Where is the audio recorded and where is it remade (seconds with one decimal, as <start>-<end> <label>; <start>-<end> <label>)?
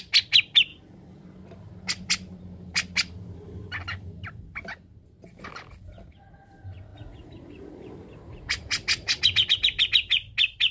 0.0-6.9 recorded; 6.9-9.2 remade; 9.2-10.7 recorded